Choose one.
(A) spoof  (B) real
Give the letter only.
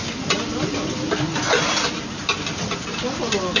B